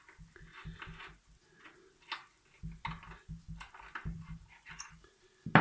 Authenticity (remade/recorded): recorded